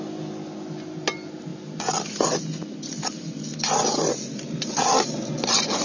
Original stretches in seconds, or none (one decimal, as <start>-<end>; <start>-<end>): 0.0-5.8